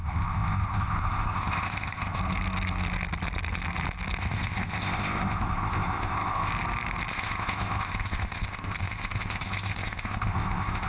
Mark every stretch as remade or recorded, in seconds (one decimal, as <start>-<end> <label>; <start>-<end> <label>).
0.0-2.2 remade; 2.2-4.2 recorded; 4.2-6.5 remade; 6.5-7.1 recorded; 7.1-10.9 remade